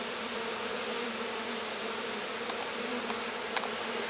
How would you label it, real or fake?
real